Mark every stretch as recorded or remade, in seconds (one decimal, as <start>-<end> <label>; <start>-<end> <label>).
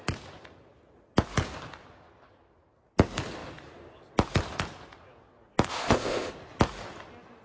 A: 0.0-5.7 recorded; 5.7-6.3 remade; 6.3-7.4 recorded